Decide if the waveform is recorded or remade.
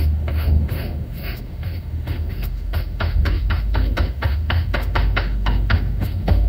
remade